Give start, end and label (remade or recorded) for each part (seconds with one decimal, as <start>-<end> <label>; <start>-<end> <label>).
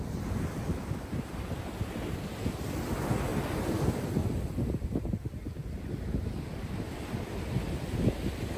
0.0-3.3 recorded; 3.3-5.0 remade; 5.0-8.6 recorded